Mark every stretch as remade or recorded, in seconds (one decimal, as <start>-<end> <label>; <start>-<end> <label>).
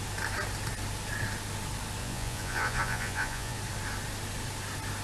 0.0-2.0 recorded; 2.0-3.6 remade; 3.6-5.0 recorded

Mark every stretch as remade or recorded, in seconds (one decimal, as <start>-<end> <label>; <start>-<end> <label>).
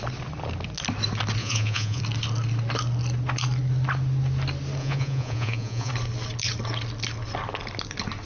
0.0-1.4 recorded; 1.4-2.0 remade; 2.0-4.8 recorded; 4.8-5.9 remade; 5.9-8.3 recorded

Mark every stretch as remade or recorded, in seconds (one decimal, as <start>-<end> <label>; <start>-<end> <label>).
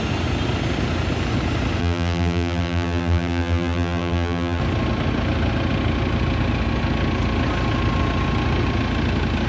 0.0-1.8 recorded; 1.8-4.6 remade; 4.6-9.5 recorded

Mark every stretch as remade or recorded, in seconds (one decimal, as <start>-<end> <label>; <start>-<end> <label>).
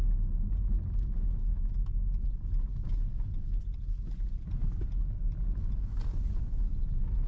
0.0-7.3 recorded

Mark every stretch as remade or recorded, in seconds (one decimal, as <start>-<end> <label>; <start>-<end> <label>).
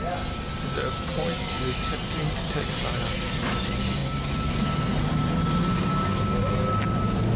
0.0-7.4 recorded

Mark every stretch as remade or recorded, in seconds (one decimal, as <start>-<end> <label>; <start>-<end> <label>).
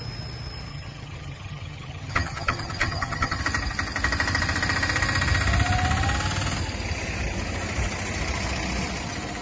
0.0-0.7 recorded; 0.7-3.4 remade; 3.4-9.4 recorded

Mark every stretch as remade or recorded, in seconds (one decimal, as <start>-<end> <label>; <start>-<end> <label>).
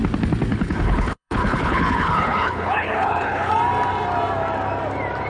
0.0-0.5 recorded; 0.5-3.5 remade; 3.5-5.3 recorded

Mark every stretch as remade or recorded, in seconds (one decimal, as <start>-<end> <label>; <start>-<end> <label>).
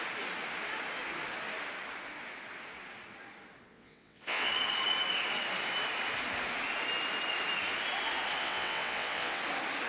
0.0-3.7 recorded; 3.7-4.5 remade; 4.5-8.4 recorded; 8.4-9.4 remade; 9.4-9.9 recorded